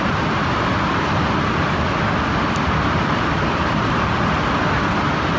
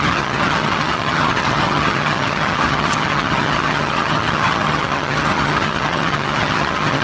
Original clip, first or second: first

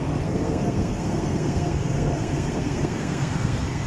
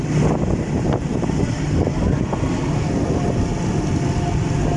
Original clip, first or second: second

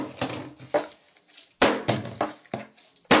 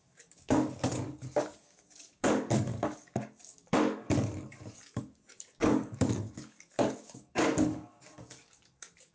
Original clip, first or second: first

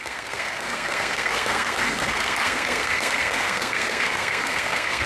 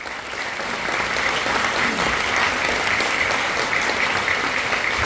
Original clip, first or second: second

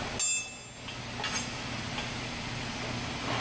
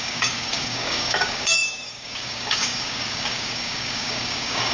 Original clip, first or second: first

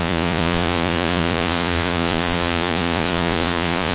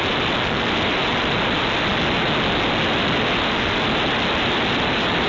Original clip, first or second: second